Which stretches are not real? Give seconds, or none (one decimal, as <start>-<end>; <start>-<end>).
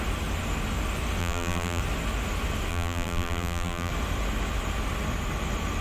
1.2-1.8; 2.7-3.9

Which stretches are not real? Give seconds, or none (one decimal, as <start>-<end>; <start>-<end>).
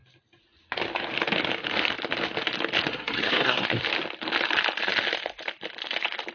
2.9-3.8